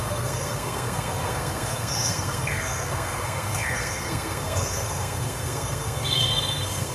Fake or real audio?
fake